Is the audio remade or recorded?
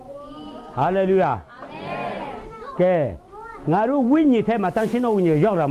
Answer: recorded